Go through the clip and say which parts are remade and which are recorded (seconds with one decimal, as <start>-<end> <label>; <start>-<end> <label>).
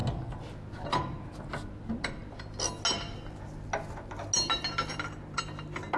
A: 0.0-6.0 recorded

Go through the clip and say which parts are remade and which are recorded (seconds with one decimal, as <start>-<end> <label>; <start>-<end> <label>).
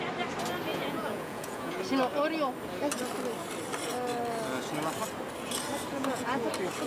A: 0.0-0.7 recorded; 0.7-1.8 remade; 1.8-5.9 recorded; 5.9-6.5 remade; 6.5-6.9 recorded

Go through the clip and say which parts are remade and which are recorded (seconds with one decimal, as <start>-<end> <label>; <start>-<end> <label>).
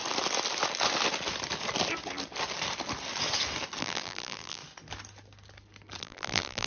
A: 0.0-3.8 recorded; 3.8-4.6 remade; 4.6-6.0 recorded; 6.0-6.7 remade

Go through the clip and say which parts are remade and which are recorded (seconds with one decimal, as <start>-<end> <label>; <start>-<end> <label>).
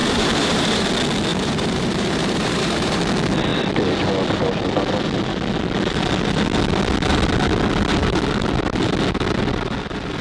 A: 0.0-0.9 remade; 0.9-1.3 recorded; 1.3-3.0 remade; 3.0-10.2 recorded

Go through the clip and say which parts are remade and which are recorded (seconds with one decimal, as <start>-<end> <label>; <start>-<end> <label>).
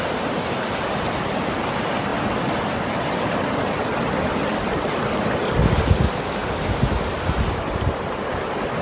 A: 0.0-8.8 recorded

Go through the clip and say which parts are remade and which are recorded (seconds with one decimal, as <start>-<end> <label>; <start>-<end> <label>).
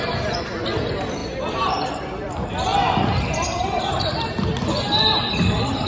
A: 0.0-5.9 recorded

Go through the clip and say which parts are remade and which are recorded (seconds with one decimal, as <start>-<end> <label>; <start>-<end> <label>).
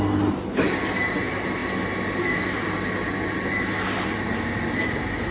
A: 0.0-5.3 recorded